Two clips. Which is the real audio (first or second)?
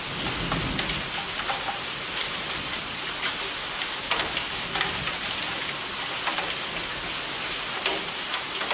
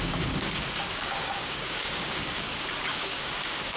first